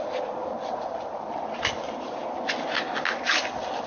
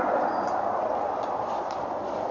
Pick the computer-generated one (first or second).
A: second